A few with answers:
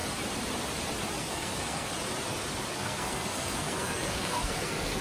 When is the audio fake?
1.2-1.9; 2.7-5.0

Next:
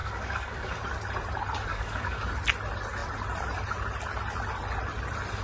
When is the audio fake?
0.0-0.8; 1.7-2.2

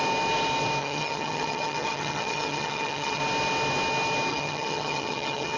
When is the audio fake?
0.8-3.2; 4.3-5.6